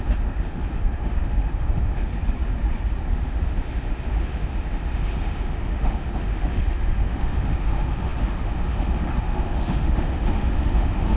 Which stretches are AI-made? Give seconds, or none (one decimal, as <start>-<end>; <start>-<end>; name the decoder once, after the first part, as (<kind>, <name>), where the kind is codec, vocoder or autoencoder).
0.0-2.1 (autoencoder, DAC-VAE); 3.0-11.2